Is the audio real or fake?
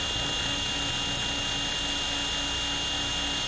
real